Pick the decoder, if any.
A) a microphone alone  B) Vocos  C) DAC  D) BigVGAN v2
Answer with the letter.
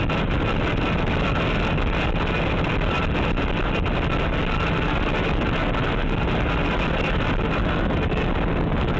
A